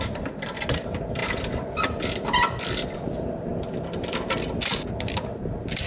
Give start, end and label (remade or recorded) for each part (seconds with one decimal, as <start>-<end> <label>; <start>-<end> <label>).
0.0-5.9 recorded